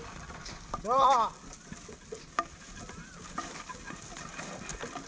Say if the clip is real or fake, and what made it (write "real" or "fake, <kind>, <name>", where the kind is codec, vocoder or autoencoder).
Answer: real